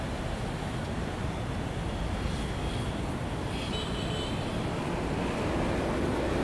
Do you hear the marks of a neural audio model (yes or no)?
no